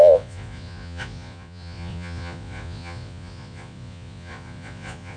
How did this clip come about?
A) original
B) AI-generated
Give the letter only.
B